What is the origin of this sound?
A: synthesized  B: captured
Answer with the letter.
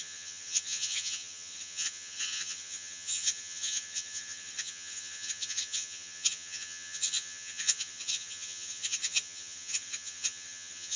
A